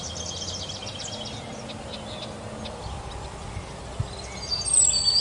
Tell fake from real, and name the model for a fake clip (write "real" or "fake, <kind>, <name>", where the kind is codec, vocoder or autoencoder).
real